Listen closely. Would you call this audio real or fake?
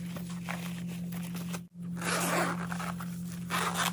real